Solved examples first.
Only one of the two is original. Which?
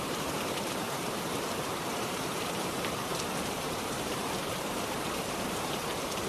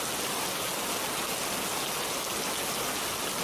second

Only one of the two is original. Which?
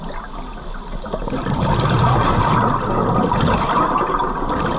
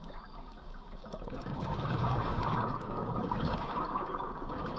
first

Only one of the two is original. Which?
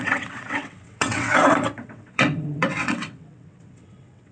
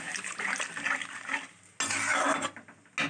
second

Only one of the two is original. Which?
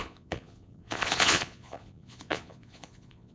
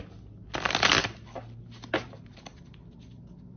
second